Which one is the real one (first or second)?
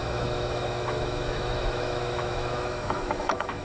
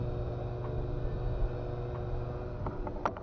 second